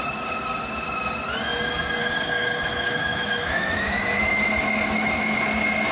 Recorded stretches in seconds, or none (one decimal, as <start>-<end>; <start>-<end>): 0.0-2.0; 5.5-5.9